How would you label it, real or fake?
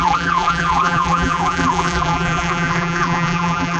fake